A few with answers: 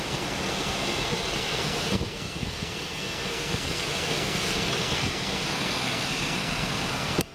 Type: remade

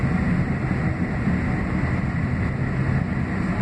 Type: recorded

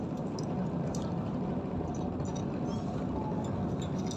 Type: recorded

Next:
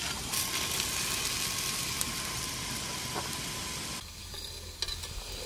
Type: recorded